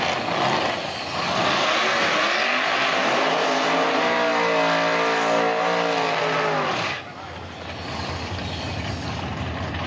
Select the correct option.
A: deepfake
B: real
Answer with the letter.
B